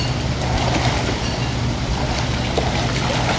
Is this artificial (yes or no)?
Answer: no